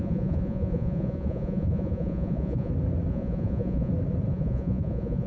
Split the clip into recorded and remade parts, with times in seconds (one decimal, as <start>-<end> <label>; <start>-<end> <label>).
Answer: 0.0-2.7 remade; 2.7-3.1 recorded; 3.1-3.9 remade; 3.9-4.3 recorded; 4.3-5.3 remade